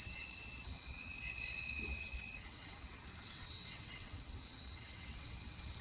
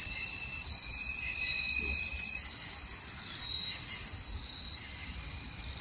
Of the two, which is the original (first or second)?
second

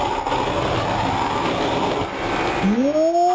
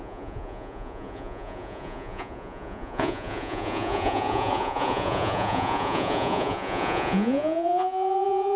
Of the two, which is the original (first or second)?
first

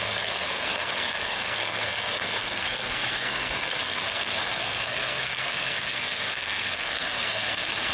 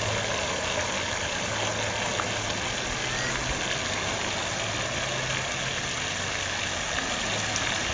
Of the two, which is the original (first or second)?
second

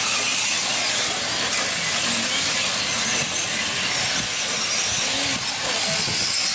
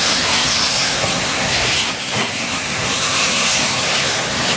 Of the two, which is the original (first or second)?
first